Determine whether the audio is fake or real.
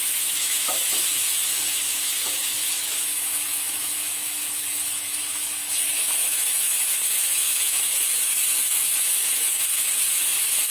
fake